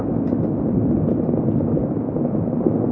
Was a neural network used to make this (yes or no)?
no